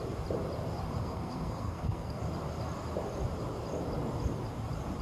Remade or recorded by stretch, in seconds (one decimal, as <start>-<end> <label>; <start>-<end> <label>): 0.0-1.0 recorded; 1.0-2.2 remade; 2.2-5.0 recorded